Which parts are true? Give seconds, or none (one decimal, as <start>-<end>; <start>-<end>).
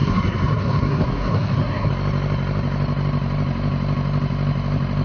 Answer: 1.9-5.0